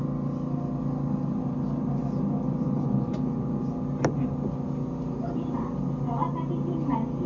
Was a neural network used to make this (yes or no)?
no